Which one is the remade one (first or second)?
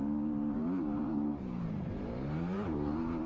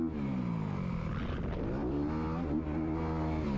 first